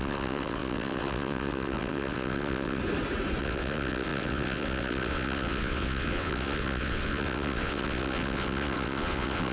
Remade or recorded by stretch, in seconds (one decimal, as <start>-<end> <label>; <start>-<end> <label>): 0.0-2.8 remade; 2.8-3.4 recorded; 3.4-9.5 remade